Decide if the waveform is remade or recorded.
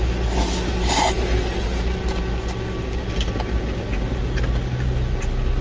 recorded